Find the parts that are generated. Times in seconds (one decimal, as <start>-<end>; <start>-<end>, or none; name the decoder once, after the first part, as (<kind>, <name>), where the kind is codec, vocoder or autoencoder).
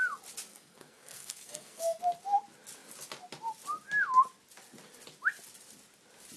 0.5-2.0 (codec, SNAC)